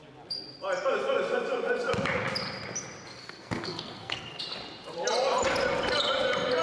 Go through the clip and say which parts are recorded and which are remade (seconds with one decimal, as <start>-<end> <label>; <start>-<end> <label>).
0.0-3.2 recorded; 3.2-4.4 remade; 4.4-6.6 recorded